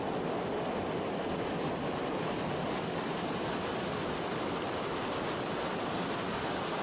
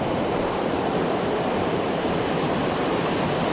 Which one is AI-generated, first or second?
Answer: second